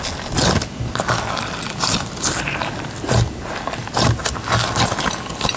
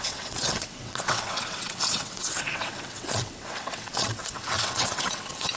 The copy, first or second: second